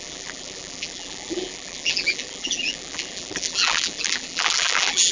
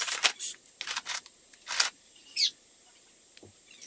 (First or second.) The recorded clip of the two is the second